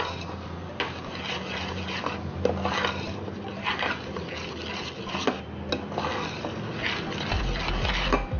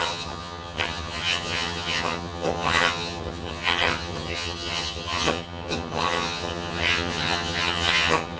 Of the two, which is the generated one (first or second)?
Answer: second